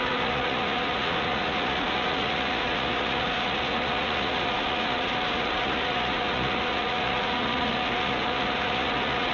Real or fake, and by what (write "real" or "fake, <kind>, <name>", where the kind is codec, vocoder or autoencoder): fake, vocoder, Vocos